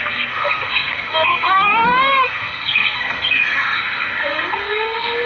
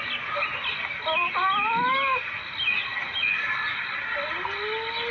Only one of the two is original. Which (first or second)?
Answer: second